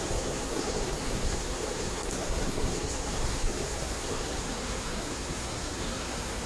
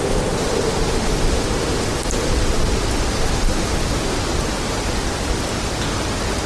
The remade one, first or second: first